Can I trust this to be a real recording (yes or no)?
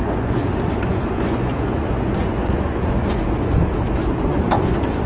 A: no